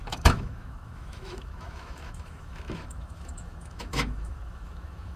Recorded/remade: remade